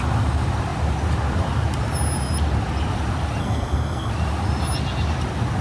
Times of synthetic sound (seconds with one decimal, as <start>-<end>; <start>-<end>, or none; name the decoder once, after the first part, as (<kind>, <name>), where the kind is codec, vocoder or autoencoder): 3.4-4.1 (codec, SNAC)